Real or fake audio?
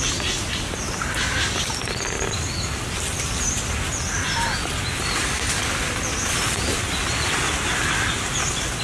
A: real